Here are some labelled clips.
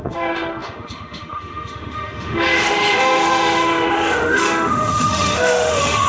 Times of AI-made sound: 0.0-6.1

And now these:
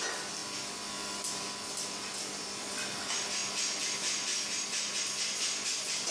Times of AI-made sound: none

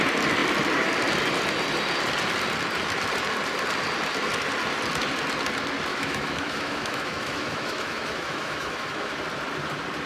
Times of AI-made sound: 5.9-9.2

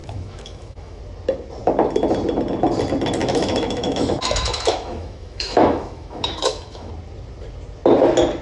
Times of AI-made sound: 0.0-1.0; 3.2-6.9

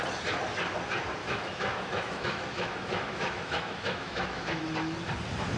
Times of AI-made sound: 1.2-4.6

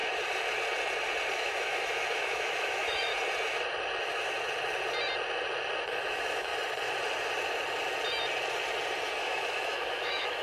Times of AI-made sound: 1.3-3.1; 6.0-6.5; 9.2-10.4